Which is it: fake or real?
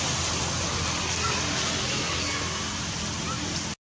real